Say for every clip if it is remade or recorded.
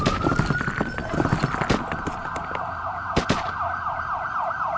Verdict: recorded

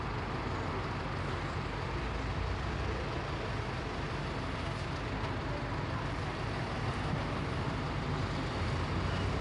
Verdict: recorded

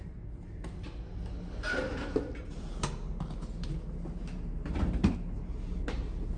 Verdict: recorded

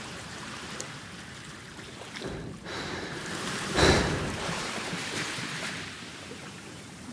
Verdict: remade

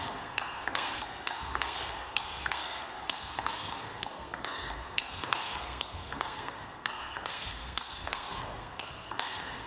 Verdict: remade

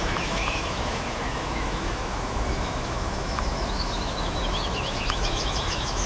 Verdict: remade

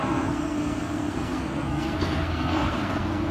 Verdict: remade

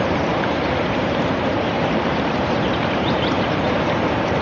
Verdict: remade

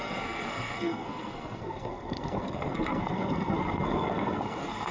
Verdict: remade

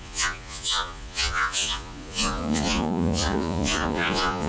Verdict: remade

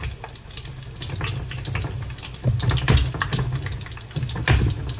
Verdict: recorded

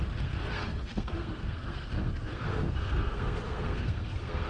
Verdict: remade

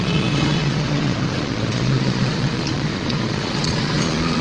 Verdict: remade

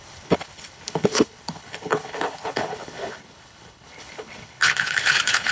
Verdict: remade